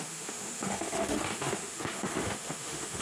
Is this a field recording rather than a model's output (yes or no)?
no